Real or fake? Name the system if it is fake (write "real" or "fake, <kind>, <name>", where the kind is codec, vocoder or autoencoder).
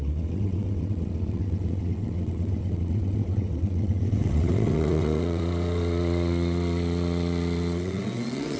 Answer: fake, vocoder, WaveNeXt